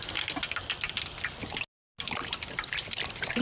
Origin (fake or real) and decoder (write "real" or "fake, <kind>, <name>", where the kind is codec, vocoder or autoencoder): real